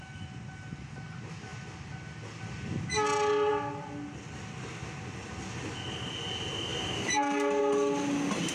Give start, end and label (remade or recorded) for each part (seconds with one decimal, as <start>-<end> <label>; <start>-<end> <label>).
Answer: 0.0-8.5 recorded